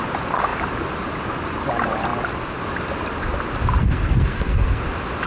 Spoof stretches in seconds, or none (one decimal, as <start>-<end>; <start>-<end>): 3.8-4.8